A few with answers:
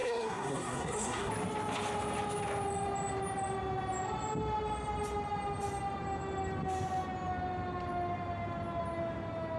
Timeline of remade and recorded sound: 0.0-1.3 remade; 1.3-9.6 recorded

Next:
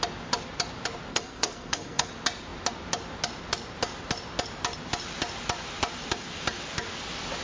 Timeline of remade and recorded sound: 0.0-1.1 recorded; 1.1-2.1 remade; 2.1-7.4 recorded

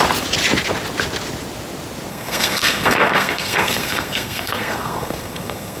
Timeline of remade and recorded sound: 0.0-2.1 recorded; 2.1-5.8 remade